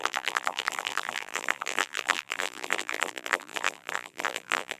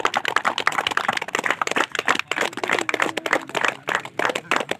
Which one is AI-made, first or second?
first